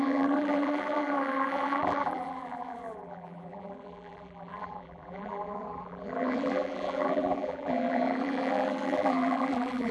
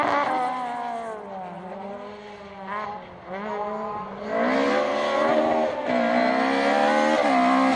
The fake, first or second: first